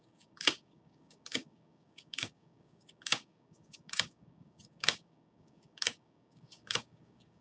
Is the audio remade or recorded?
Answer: remade